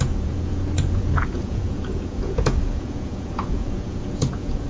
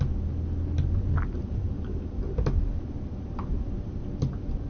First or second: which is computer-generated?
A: first